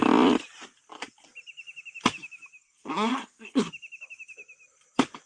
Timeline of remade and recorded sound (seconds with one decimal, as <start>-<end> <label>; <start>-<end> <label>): 0.0-2.6 recorded; 2.6-3.7 remade; 3.7-5.3 recorded